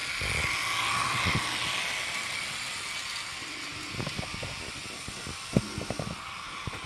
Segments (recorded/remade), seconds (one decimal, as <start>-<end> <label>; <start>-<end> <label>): 0.0-6.9 recorded